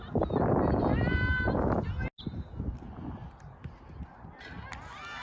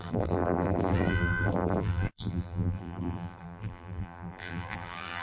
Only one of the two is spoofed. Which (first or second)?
second